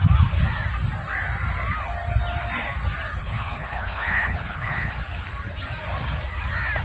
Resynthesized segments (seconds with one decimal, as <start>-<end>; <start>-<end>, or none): 3.2-4.9